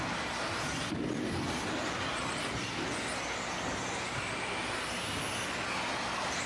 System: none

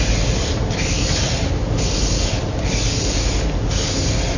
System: none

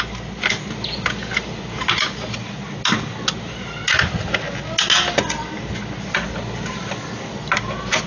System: none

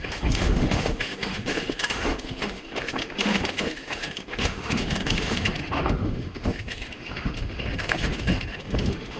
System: autoencoder, DAC-VAE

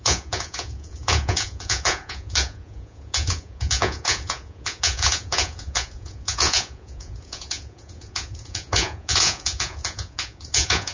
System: vocoder, Vocos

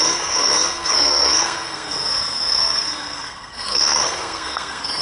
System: codec, SNAC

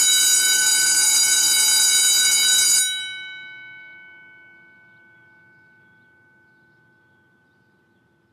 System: none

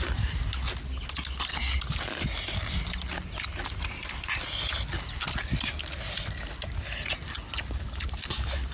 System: none